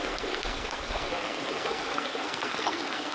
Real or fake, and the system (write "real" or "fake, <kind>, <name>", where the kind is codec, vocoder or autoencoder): fake, codec, SNAC